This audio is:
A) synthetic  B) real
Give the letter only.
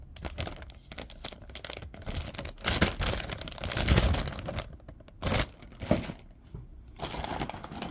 B